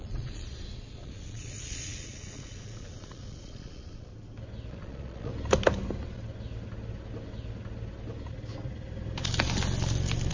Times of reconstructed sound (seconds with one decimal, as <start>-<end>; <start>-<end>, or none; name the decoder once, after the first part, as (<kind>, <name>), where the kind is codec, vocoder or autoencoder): 0.0-4.1 (vocoder, Vocos); 4.7-5.3